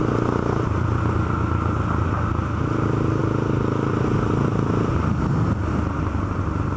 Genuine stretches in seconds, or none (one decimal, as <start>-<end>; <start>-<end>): 0.0-6.8